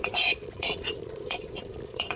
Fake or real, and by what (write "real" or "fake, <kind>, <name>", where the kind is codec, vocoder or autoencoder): fake, vocoder, Vocos